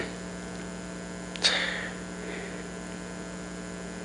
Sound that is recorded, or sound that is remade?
recorded